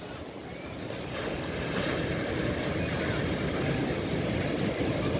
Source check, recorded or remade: recorded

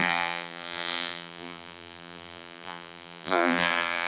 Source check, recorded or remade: remade